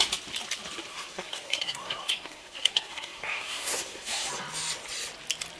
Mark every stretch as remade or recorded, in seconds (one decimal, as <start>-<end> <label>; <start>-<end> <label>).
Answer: 0.0-0.9 recorded; 0.9-4.3 remade; 4.3-5.6 recorded